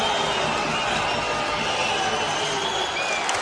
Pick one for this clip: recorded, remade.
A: recorded